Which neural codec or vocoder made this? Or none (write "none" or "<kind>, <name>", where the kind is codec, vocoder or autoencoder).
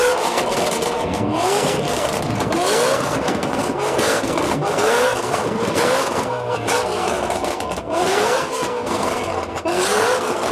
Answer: codec, SNAC